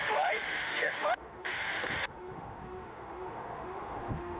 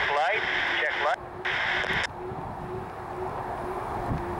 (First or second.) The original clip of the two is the second